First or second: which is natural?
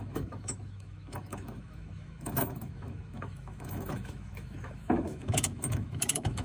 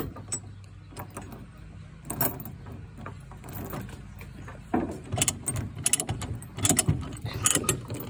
second